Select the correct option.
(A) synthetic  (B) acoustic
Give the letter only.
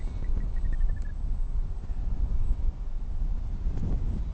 B